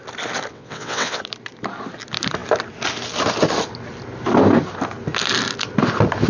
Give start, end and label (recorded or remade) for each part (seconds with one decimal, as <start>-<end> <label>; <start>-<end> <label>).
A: 0.0-0.5 recorded; 0.5-1.2 remade; 1.2-6.3 recorded